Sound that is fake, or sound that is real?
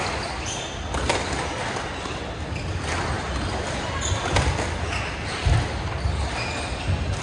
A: real